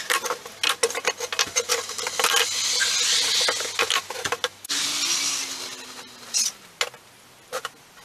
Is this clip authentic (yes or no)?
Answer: yes